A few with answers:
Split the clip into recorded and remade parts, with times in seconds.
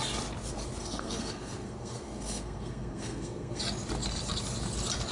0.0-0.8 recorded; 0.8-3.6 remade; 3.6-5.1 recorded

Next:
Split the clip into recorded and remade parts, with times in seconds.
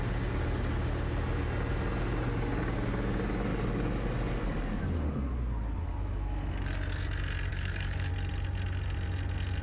0.0-3.5 recorded; 3.5-4.8 remade; 4.8-7.5 recorded; 7.5-8.1 remade; 8.1-9.6 recorded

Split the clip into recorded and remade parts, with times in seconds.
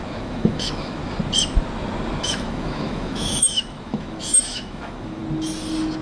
0.0-1.0 remade; 1.0-2.2 recorded; 2.2-5.2 remade; 5.2-6.0 recorded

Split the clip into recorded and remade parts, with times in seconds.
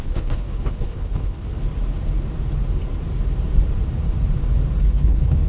0.0-1.5 remade; 1.5-4.8 recorded; 4.8-5.5 remade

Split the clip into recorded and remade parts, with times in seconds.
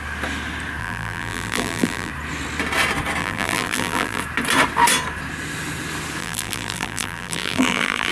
0.0-0.8 recorded; 0.8-2.1 remade; 2.1-3.2 recorded; 3.2-4.2 remade; 4.2-6.2 recorded; 6.2-8.1 remade